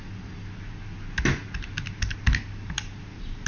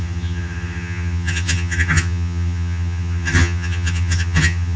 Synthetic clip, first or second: second